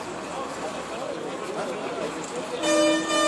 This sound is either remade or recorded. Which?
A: recorded